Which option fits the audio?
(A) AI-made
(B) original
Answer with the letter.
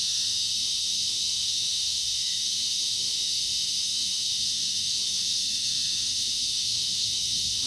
A